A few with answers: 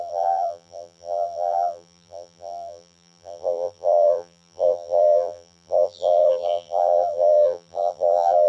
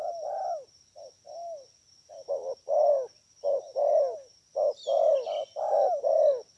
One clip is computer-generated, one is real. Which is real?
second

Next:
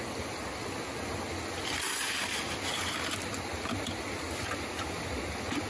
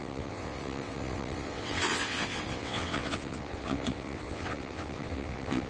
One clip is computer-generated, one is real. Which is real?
first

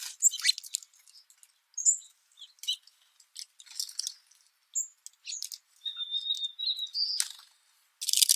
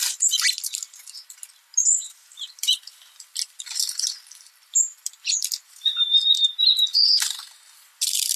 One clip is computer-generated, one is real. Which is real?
first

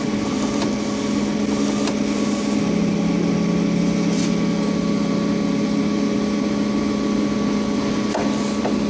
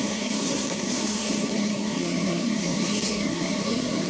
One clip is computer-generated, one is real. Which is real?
first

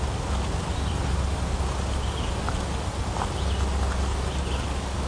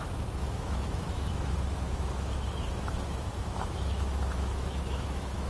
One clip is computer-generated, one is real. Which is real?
first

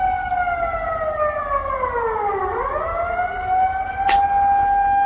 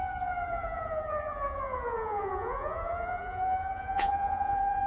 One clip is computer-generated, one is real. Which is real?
first